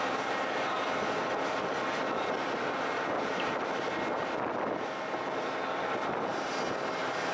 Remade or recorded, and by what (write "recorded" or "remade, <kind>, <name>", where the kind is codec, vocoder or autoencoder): recorded